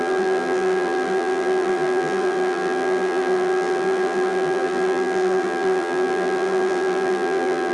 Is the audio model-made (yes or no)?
yes